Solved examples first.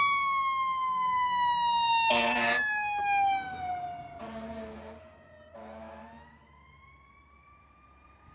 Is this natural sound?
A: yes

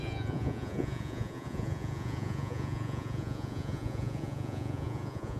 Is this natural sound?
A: no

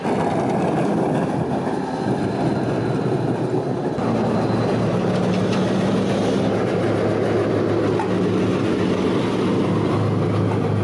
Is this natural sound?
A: yes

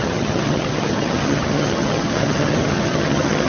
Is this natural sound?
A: no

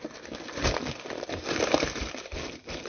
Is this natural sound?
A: yes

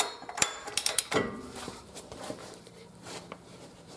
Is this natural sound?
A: no